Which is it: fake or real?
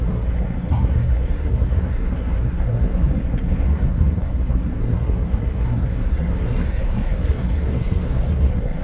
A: fake